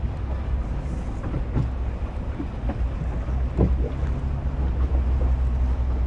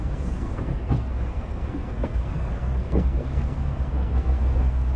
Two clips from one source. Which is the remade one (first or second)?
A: second